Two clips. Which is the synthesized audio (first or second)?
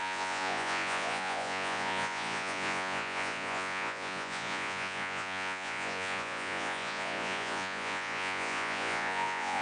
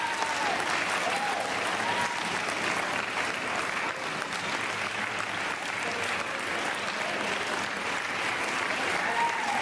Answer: first